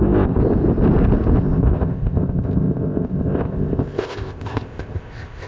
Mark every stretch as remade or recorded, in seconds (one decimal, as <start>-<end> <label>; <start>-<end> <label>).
0.0-0.4 remade; 0.4-1.4 recorded; 1.4-5.5 remade